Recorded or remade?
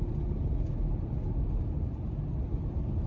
recorded